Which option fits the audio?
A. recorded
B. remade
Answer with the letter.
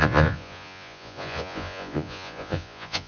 B